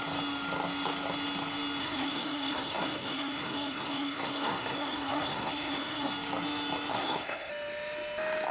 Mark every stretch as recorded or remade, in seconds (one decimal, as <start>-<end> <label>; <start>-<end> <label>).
0.0-1.8 recorded; 1.8-6.1 remade; 6.1-6.9 recorded; 6.9-7.5 remade; 7.5-8.5 recorded